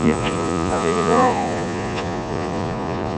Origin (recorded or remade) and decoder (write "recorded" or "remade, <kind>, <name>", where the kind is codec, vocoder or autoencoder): remade, vocoder, Vocos